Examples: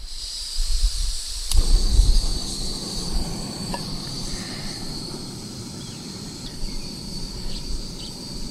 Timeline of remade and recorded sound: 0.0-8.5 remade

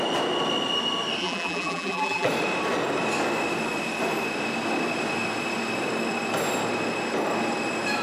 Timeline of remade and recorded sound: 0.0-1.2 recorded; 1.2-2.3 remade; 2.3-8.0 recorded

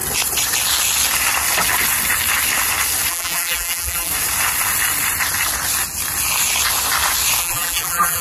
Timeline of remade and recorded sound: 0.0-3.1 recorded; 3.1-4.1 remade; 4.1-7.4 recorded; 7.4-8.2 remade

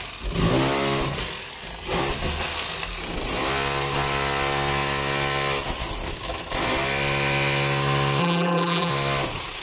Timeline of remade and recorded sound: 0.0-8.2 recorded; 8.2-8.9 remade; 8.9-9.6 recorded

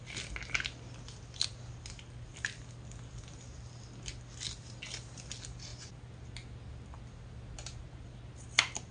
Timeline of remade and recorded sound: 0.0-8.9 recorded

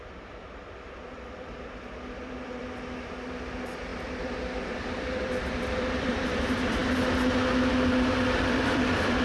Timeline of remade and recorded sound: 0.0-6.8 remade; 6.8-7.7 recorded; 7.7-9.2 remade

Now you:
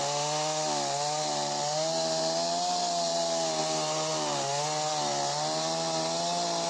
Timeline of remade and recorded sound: 0.0-6.7 recorded

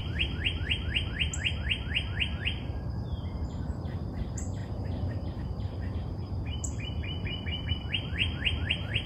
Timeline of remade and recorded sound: 0.0-2.6 recorded; 2.6-8.2 remade; 8.2-8.7 recorded; 8.7-9.1 remade